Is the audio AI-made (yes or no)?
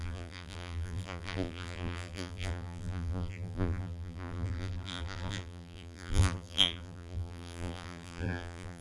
yes